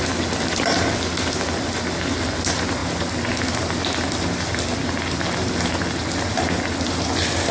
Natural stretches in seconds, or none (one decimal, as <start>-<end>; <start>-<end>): 0.0-7.5